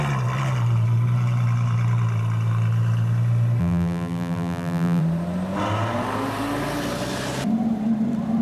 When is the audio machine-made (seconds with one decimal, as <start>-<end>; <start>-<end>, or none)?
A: 3.6-5.0